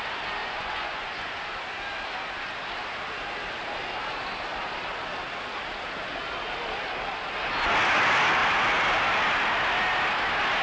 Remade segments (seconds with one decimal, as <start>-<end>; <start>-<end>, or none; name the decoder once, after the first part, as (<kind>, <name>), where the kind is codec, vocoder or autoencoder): 0.4-1.3 (vocoder, Vocos)